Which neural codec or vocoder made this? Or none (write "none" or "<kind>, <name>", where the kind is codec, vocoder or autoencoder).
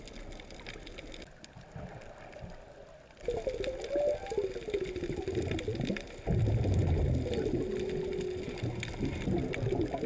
none